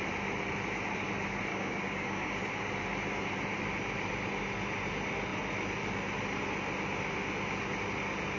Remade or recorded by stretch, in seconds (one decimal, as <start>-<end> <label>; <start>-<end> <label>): 0.0-1.5 recorded; 1.5-2.4 remade; 2.4-8.4 recorded

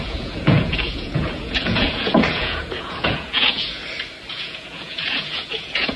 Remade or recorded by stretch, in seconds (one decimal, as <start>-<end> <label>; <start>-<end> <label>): 0.0-3.8 remade; 3.8-4.3 recorded; 4.3-6.0 remade

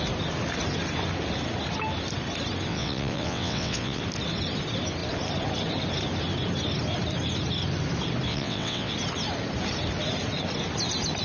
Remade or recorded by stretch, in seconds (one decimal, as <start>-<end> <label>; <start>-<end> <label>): 0.0-2.7 recorded; 2.7-4.0 remade; 4.0-8.3 recorded; 8.3-8.9 remade; 8.9-11.2 recorded

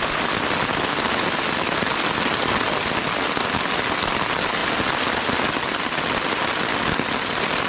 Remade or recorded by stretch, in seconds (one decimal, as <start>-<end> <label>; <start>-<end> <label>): 0.0-7.7 recorded

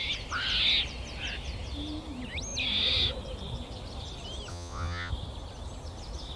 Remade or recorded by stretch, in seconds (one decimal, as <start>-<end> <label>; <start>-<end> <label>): 0.0-4.5 recorded; 4.5-5.1 remade; 5.1-6.4 recorded

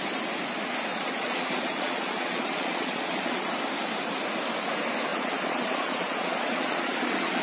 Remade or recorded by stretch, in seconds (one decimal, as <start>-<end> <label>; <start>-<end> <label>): 0.0-0.9 recorded; 0.9-3.5 remade; 3.5-5.1 recorded; 5.1-7.4 remade